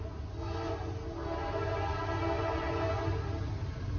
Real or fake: real